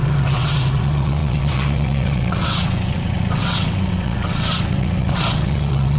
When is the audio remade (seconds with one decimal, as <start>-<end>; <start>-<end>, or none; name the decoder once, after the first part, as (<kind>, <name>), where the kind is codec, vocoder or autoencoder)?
0.0-6.0 (vocoder, WaveNeXt)